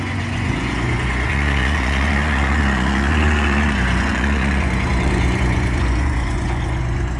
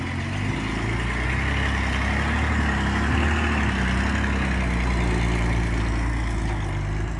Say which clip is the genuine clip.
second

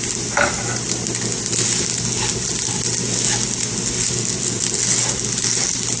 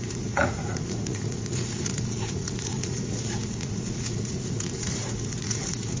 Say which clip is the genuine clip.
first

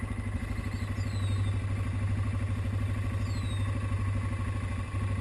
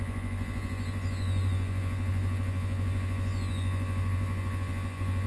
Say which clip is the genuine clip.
first